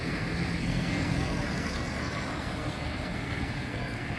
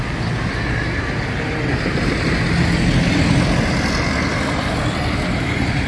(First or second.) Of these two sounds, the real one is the second